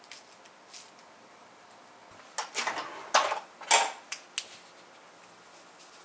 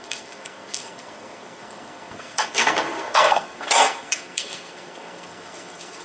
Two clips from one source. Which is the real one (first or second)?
first